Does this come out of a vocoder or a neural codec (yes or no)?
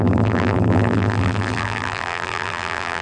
yes